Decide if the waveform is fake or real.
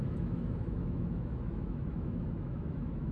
fake